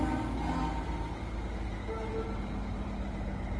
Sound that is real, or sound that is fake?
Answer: real